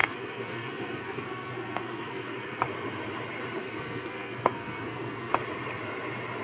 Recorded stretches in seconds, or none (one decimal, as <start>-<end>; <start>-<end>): 2.6-3.6; 5.3-6.4